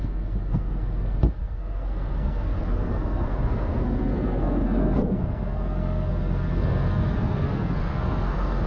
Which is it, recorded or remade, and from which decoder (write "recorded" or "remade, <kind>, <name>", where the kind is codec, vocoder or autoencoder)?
remade, codec, SNAC